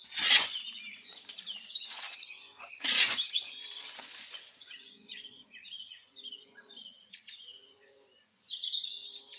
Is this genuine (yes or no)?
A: no